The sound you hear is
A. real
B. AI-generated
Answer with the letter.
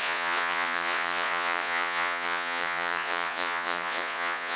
B